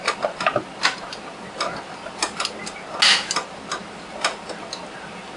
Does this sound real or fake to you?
real